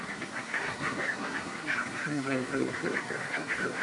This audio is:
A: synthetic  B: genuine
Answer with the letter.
A